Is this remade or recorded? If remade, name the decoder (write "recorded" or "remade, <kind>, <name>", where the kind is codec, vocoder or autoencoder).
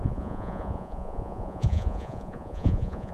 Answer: remade, vocoder, Vocos